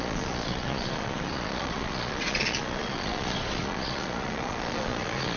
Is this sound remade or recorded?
remade